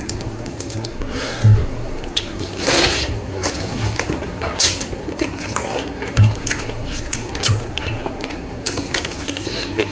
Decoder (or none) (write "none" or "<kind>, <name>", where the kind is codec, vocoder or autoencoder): codec, SNAC